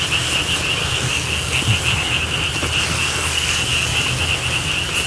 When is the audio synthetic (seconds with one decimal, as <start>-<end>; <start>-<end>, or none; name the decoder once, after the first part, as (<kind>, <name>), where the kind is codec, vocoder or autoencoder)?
0.8-1.6 (codec, SNAC); 2.9-3.5